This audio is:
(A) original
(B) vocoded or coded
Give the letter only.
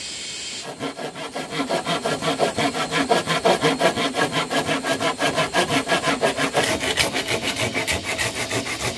A